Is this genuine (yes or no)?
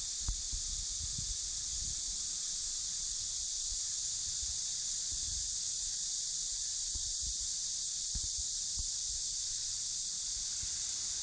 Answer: yes